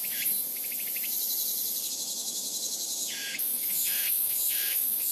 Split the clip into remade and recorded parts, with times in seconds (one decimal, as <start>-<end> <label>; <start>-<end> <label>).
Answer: 0.0-1.9 recorded; 1.9-5.1 remade